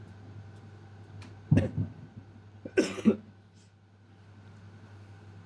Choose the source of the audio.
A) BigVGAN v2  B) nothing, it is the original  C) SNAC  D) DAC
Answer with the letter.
B